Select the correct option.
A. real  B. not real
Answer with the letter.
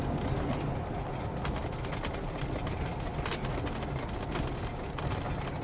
A